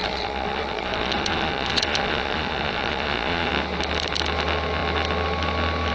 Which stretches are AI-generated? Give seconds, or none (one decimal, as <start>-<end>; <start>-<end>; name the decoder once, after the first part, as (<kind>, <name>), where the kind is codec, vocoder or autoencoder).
0.0-3.5 (vocoder, Vocos)